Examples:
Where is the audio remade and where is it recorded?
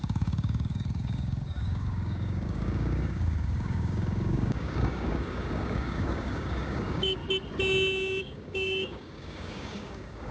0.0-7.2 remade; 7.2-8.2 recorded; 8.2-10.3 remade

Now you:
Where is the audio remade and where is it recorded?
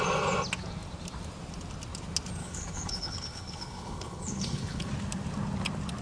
0.0-2.4 recorded; 2.4-4.9 remade; 4.9-6.0 recorded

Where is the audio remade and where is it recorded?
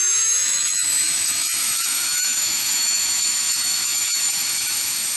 0.0-5.2 remade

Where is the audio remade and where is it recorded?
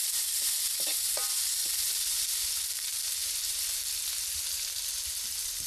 0.0-5.7 recorded